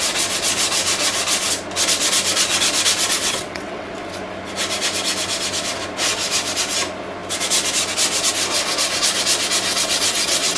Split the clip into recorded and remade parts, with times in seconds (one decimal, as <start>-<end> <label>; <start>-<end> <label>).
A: 0.0-3.2 recorded; 3.2-3.9 remade; 3.9-9.7 recorded; 9.7-10.6 remade